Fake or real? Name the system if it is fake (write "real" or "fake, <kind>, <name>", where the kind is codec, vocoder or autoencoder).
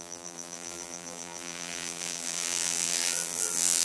fake, vocoder, BigVGAN v2